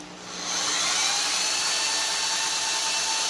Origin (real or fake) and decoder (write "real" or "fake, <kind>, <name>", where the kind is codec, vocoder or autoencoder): real